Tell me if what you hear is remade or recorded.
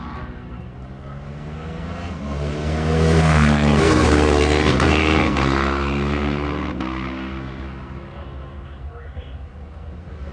remade